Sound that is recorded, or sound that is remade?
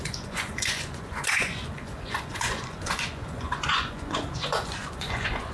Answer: remade